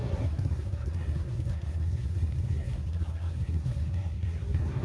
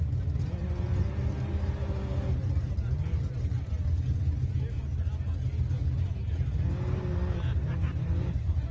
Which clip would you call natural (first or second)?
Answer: second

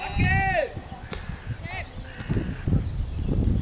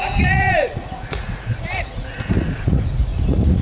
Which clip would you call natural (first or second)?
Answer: first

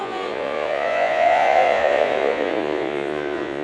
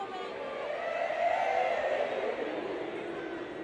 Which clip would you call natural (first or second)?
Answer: second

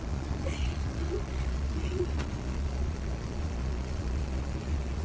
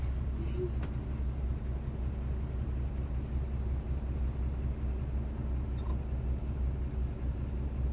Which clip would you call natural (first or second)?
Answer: second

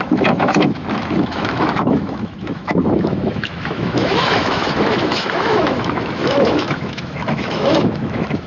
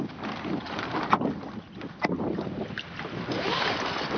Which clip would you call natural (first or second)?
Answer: second